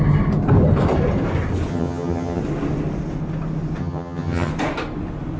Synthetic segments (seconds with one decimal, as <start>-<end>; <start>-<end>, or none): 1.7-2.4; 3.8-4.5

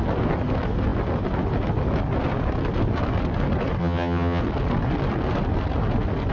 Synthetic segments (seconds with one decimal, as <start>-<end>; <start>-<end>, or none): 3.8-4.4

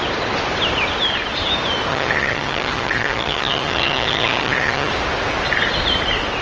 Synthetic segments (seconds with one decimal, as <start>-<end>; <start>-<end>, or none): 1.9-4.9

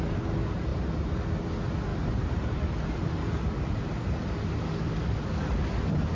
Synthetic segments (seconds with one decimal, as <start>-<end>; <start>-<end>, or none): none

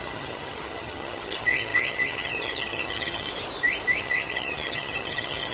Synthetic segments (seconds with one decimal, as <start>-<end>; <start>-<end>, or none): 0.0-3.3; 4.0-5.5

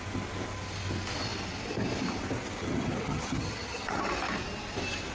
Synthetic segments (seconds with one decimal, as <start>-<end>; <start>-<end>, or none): 2.6-4.0

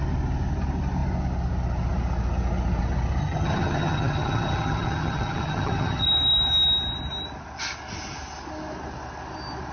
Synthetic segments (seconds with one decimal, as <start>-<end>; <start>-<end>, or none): 3.2-6.1

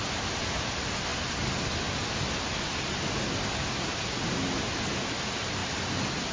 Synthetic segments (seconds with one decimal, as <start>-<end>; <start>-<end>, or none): none